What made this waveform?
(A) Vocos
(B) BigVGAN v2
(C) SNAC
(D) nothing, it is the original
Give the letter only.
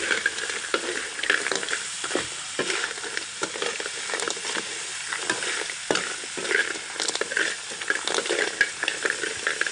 D